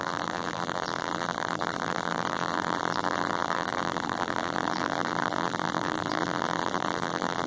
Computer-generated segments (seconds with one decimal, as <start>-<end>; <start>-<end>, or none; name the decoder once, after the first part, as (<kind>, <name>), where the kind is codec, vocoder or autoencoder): 0.0-7.5 (vocoder, BigVGAN v2)